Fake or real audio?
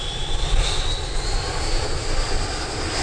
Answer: real